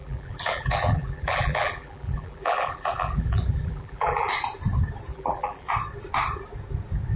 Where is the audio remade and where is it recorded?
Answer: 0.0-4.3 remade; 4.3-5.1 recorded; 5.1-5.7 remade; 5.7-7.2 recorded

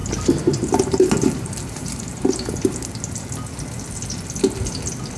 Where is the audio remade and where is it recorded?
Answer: 0.0-2.8 remade; 2.8-5.2 recorded